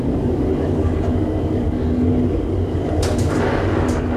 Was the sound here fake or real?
fake